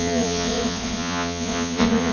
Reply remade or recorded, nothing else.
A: remade